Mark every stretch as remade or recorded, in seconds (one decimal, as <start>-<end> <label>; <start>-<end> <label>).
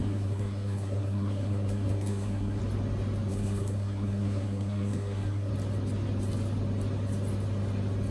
0.0-2.6 remade; 2.6-3.3 recorded; 3.3-5.5 remade; 5.5-8.1 recorded